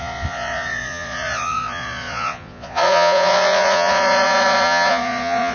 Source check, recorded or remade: remade